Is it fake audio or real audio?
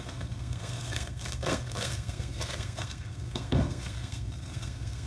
fake